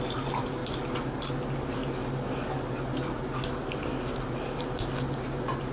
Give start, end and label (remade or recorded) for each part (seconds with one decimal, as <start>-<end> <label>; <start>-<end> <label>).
0.0-5.7 recorded